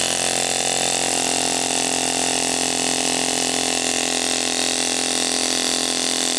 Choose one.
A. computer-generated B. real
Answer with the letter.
B